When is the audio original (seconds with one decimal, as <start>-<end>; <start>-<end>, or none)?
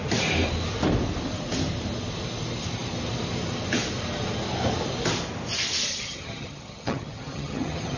0.0-5.9